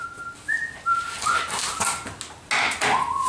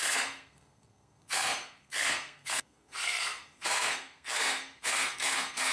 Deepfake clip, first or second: second